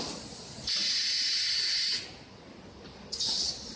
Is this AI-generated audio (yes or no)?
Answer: no